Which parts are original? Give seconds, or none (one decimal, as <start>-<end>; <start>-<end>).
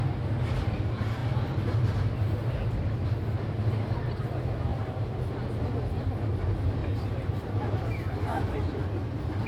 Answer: 0.0-4.7; 5.2-6.8; 7.7-9.5